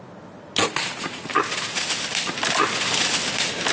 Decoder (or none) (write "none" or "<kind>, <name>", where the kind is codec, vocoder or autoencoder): none